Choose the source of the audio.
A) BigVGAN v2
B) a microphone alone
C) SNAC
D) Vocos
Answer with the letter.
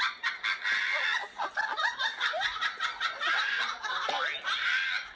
B